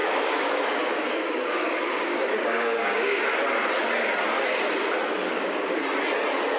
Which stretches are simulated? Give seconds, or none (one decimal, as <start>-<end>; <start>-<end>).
0.0-3.2; 5.2-5.8